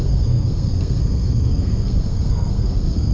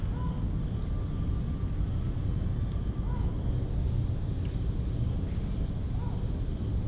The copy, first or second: first